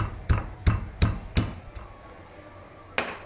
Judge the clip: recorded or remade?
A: recorded